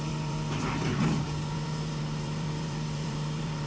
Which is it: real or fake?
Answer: fake